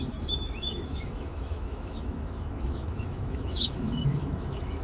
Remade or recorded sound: remade